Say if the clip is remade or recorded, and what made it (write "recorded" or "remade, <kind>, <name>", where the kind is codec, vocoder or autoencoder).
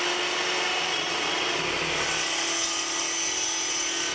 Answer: recorded